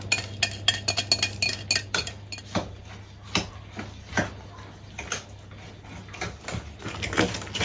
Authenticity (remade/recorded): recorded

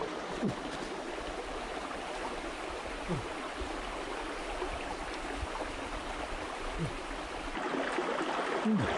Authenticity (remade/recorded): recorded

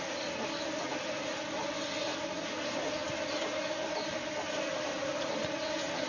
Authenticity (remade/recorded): recorded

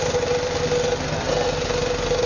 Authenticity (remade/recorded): recorded